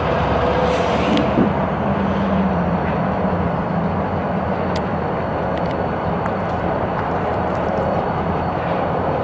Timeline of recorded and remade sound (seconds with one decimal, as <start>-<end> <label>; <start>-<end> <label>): 0.0-0.6 remade; 0.6-5.8 recorded; 5.8-9.2 remade